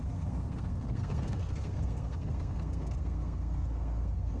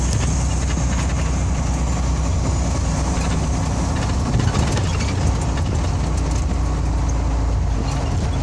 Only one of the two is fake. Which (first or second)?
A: first